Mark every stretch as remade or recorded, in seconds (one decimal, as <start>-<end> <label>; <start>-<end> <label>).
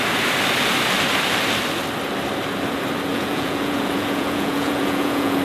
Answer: 0.0-3.1 recorded; 3.1-5.4 remade